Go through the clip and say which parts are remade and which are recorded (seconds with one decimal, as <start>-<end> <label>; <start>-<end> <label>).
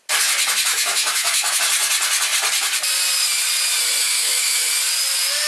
0.0-0.7 recorded; 0.7-1.6 remade; 1.6-4.0 recorded; 4.0-4.7 remade; 4.7-5.5 recorded